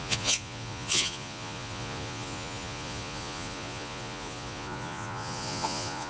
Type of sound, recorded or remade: remade